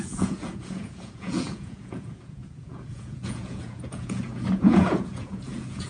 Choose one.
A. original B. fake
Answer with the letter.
B